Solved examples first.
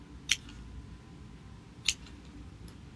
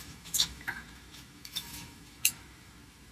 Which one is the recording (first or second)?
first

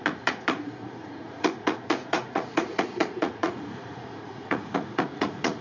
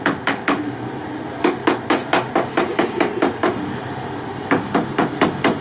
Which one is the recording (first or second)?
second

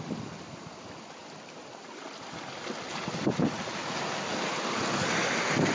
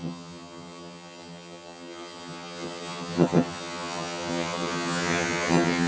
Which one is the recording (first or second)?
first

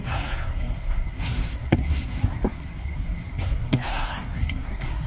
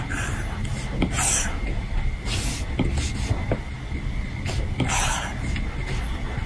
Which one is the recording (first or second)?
second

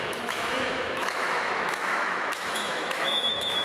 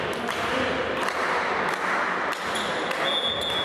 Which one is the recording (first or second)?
second